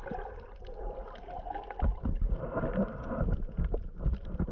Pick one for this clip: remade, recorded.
recorded